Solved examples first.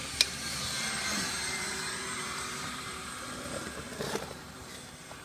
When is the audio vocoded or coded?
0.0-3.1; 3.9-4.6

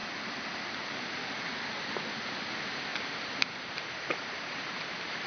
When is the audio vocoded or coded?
2.9-4.8

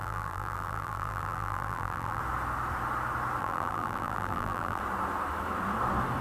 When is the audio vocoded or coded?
0.0-2.2; 3.4-4.8